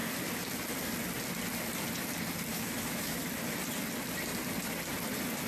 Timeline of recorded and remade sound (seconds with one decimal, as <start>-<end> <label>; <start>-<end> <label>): 0.0-2.5 recorded; 2.5-3.2 remade; 3.2-5.5 recorded

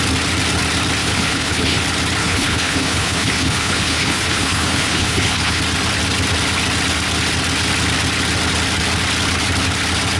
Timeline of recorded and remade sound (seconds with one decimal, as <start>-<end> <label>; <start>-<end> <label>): 0.0-1.0 recorded; 1.0-1.8 remade; 1.8-2.2 recorded; 2.2-5.6 remade; 5.6-10.2 recorded

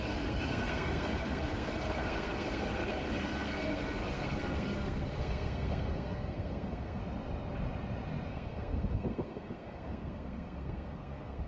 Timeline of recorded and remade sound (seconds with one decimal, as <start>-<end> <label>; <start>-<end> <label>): 0.0-7.0 remade; 7.0-8.3 recorded; 8.3-11.5 remade

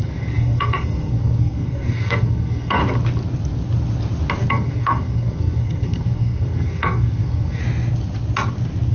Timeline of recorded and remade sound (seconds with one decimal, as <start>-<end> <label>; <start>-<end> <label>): 0.0-2.8 remade; 2.8-4.5 recorded; 4.5-7.6 remade; 7.6-8.9 recorded

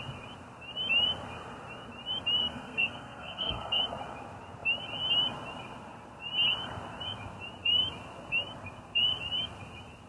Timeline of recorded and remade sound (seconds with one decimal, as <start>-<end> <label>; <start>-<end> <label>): 0.0-2.4 recorded; 2.4-3.8 remade; 3.8-10.1 recorded